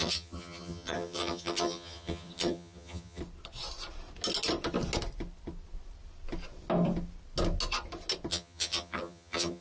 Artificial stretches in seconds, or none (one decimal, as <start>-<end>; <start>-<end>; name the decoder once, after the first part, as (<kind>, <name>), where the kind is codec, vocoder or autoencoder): 0.0-3.2 (vocoder, HiFi-GAN); 8.3-9.6